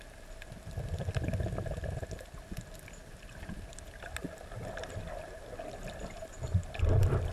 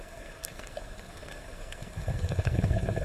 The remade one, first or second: second